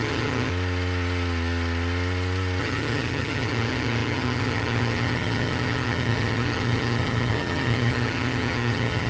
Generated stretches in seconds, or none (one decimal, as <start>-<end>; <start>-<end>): 0.0-0.5; 2.6-9.1

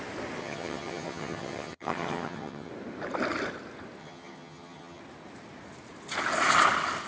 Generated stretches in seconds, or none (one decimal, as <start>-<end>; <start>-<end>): 0.4-2.7; 4.0-5.0

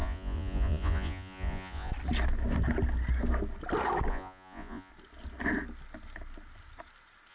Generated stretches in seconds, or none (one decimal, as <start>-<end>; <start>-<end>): 0.0-1.9; 4.1-4.9

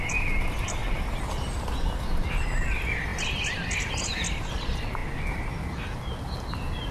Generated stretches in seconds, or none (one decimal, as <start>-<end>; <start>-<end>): none

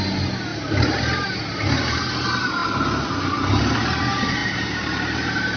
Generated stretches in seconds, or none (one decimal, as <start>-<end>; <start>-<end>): 0.5-2.0; 4.4-5.6

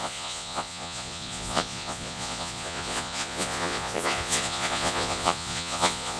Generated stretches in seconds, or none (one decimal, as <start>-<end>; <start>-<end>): 0.0-6.2

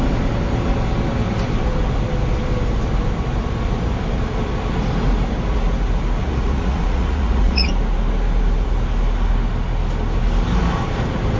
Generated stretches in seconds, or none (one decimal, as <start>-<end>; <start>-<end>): 6.2-7.7